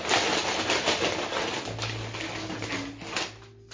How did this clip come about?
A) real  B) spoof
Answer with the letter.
A